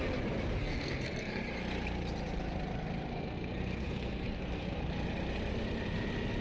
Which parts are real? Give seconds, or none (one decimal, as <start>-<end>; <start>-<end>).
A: 0.0-0.6; 1.4-3.1; 4.8-6.4